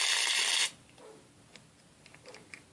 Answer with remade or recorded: recorded